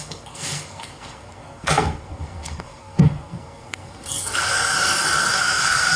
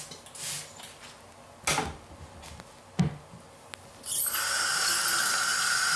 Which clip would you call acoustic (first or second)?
second